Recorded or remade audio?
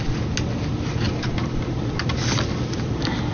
recorded